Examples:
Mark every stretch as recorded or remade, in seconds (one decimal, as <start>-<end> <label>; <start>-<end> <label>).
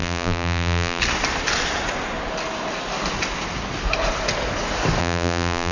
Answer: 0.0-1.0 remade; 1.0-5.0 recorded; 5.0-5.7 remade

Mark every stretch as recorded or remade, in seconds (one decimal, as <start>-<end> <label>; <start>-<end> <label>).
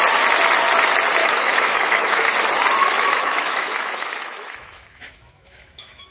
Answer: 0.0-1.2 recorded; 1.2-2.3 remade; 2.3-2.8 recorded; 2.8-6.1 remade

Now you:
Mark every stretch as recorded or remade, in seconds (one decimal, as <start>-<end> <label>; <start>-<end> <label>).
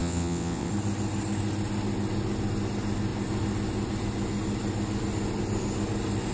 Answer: 0.0-0.7 remade; 0.7-6.3 recorded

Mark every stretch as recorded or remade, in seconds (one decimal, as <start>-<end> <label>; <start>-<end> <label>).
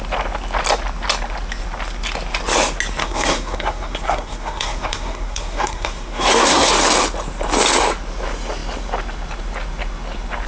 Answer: 0.0-3.0 recorded; 3.0-6.7 remade; 6.7-10.5 recorded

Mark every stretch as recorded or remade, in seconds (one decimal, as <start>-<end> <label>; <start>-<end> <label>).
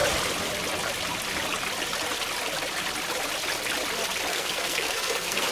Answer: 0.0-4.3 recorded; 4.3-5.5 remade